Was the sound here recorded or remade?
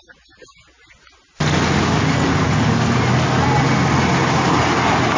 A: recorded